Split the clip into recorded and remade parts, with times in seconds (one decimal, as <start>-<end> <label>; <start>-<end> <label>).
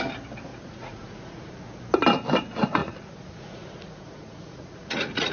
0.0-0.5 recorded; 0.5-1.5 remade; 1.5-2.8 recorded; 2.8-5.3 remade